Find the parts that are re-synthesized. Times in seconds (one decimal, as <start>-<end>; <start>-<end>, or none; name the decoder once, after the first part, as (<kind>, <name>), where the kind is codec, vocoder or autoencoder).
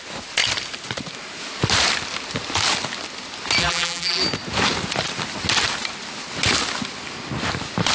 3.6-4.2 (vocoder, BigVGAN v2)